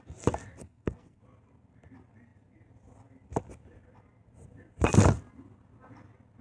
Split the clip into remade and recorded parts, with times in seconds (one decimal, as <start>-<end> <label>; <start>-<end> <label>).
0.0-0.6 recorded; 0.6-1.2 remade; 1.2-6.4 recorded